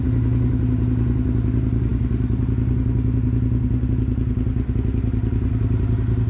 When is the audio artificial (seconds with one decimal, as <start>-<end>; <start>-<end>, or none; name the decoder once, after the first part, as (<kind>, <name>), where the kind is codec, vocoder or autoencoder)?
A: none